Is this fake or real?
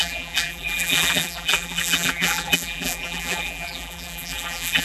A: fake